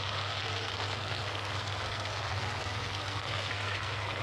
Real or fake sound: fake